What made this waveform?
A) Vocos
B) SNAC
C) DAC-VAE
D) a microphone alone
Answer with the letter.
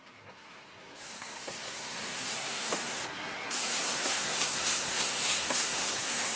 B